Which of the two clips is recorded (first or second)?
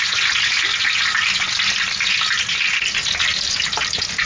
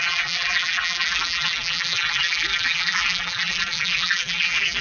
first